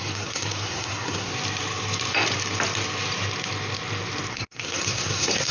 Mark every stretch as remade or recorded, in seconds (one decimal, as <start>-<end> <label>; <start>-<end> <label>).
0.0-1.3 remade; 1.3-4.3 recorded; 4.3-5.5 remade

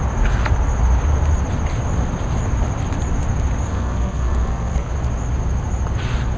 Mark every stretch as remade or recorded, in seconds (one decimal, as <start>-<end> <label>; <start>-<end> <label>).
0.0-3.7 recorded; 3.7-4.9 remade; 4.9-6.4 recorded

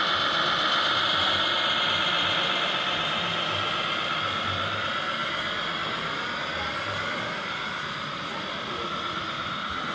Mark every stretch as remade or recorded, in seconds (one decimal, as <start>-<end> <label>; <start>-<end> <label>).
0.0-9.9 recorded

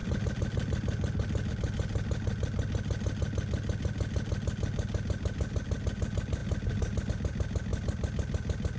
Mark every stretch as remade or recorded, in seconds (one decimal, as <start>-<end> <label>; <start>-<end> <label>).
0.0-8.8 recorded